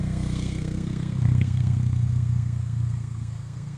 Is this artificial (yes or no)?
yes